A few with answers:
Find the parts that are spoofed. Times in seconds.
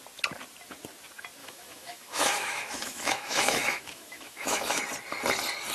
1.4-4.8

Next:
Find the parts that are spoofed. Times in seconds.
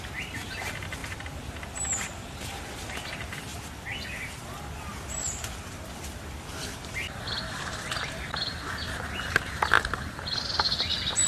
none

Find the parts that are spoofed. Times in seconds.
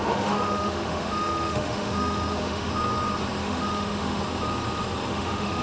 0.0-2.7; 3.4-4.2; 5.1-5.6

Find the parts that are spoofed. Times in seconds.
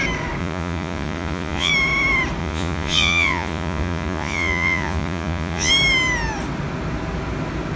0.4-1.7; 2.4-5.7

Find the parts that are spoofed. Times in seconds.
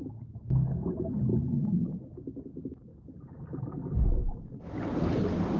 0.0-1.3; 2.5-2.9; 3.6-4.2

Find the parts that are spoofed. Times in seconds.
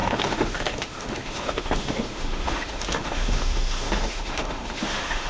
0.0-5.3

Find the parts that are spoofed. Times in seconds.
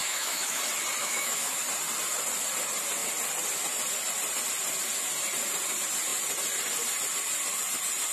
0.0-0.6; 1.0-1.6